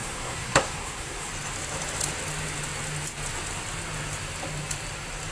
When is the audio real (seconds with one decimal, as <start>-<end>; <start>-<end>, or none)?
1.3-5.3